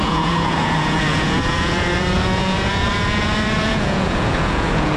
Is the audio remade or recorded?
remade